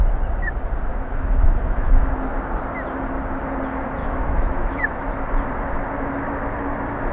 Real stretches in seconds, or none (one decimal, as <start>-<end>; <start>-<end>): 0.0-0.9; 2.1-4.0; 5.2-7.1